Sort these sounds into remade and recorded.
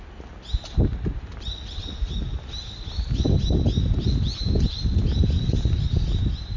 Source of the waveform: recorded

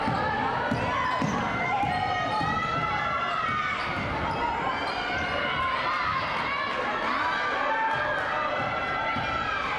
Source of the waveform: recorded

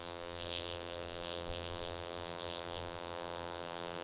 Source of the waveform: remade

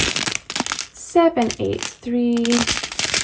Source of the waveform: recorded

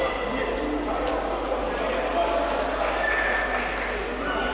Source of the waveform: recorded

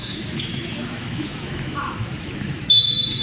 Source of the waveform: remade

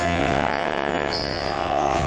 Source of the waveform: remade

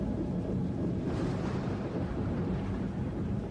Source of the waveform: remade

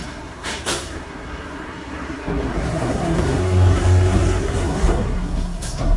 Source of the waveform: remade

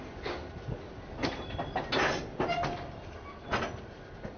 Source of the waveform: recorded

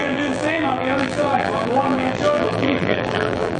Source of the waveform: remade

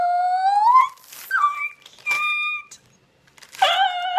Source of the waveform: recorded